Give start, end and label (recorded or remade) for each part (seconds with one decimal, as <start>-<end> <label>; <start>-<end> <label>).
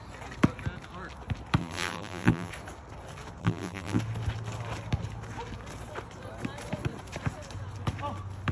0.0-1.6 recorded; 1.6-2.5 remade; 2.5-3.4 recorded; 3.4-4.0 remade; 4.0-8.5 recorded